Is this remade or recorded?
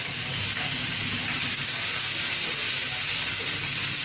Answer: recorded